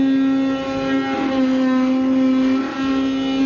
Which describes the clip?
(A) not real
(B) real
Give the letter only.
B